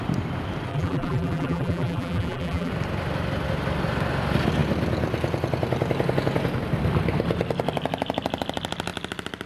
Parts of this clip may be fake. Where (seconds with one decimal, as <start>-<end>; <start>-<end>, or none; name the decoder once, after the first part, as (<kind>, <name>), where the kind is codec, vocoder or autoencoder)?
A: 0.7-2.7 (vocoder, BigVGAN v2)